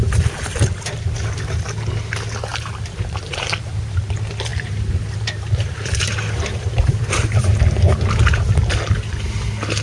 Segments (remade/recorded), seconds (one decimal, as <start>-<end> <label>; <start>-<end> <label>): 0.0-1.1 remade; 1.1-2.5 recorded; 2.5-3.8 remade; 3.8-4.5 recorded; 4.5-8.4 remade; 8.4-9.8 recorded